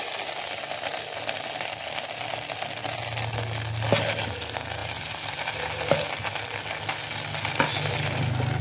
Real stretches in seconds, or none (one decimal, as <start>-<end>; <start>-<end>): 0.0-8.6